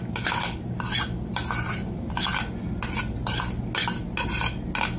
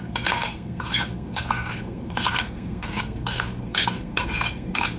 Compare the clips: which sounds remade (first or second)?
second